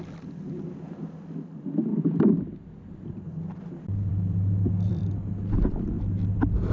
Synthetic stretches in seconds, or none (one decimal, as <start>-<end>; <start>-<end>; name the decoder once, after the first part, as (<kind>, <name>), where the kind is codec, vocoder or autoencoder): 1.9-5.9 (vocoder, BigVGAN v2)